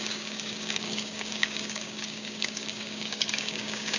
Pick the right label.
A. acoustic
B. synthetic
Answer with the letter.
B